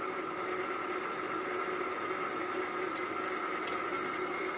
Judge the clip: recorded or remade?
recorded